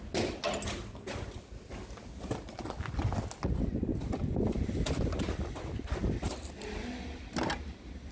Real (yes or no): yes